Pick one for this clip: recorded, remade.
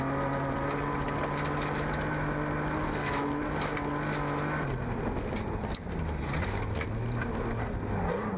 recorded